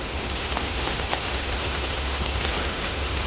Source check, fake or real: fake